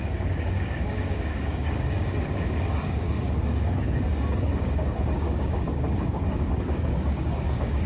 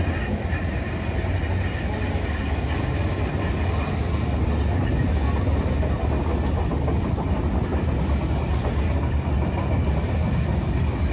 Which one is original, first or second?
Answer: second